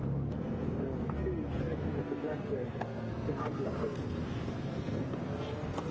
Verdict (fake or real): fake